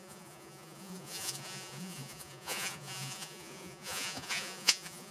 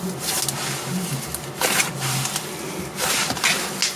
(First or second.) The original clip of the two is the second